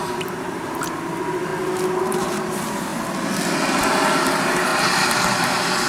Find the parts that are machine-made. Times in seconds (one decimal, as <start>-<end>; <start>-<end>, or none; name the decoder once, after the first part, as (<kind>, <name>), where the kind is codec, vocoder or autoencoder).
0.0-1.5 (vocoder, BigVGAN v2); 2.0-2.9; 4.1-4.7